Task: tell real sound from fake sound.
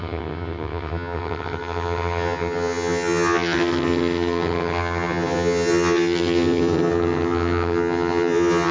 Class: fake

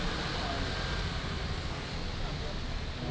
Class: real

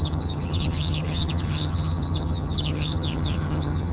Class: fake